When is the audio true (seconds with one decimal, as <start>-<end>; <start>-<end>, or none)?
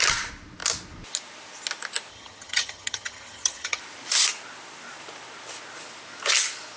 0.0-2.1; 3.8-6.8